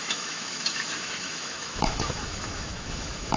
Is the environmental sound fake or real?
fake